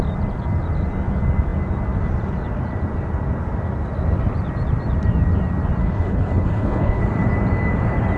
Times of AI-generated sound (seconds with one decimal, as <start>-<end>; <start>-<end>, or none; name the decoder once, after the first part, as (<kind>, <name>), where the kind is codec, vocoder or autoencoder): 5.8-7.0 (codec, HILCodec)